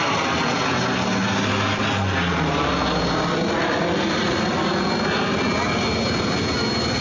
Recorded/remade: recorded